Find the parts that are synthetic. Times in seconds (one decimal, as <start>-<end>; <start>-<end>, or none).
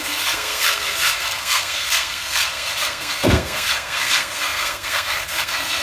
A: 0.0-5.8